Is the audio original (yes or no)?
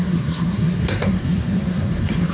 no